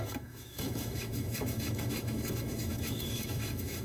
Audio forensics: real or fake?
fake